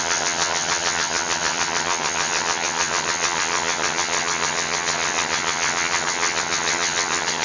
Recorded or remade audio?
remade